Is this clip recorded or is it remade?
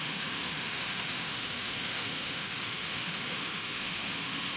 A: remade